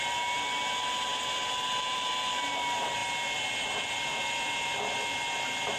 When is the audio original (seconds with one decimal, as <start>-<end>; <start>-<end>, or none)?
0.0-1.1; 2.1-5.8